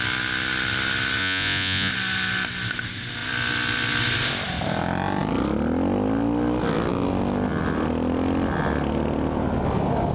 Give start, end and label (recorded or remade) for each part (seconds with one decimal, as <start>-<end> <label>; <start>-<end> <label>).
0.0-1.2 recorded; 1.2-1.9 remade; 1.9-10.1 recorded